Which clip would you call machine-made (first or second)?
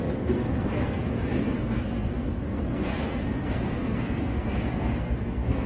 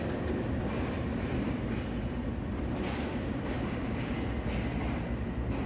first